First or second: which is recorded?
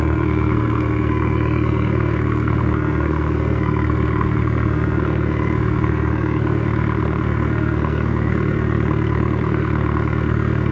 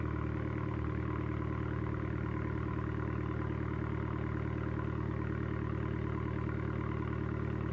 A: second